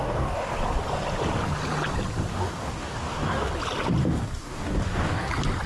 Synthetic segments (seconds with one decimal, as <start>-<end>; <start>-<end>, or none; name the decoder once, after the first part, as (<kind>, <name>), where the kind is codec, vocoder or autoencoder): 0.0-0.5 (codec, DAC); 2.3-3.5; 4.0-5.3